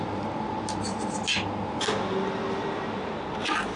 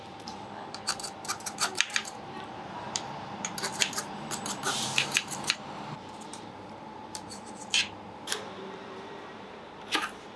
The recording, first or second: first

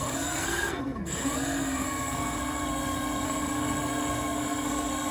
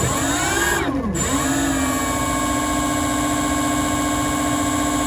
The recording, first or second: second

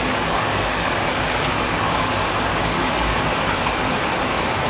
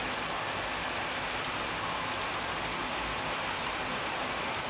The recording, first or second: second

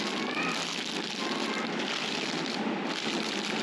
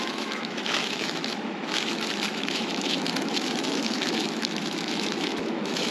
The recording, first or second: first